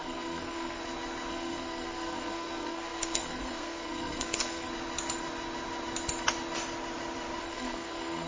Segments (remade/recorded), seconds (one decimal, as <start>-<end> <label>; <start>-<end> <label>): 0.0-0.8 remade; 0.8-1.3 recorded; 1.3-4.7 remade; 4.7-7.4 recorded; 7.4-8.3 remade